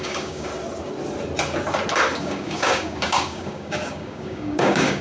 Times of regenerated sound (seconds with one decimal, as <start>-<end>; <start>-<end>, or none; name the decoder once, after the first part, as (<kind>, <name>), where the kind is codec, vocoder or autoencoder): 0.0-0.5 (codec, DAC); 2.2-5.0